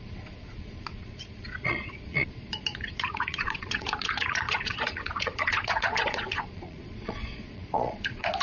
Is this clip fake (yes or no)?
yes